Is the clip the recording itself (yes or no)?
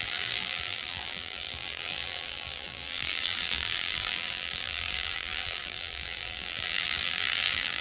no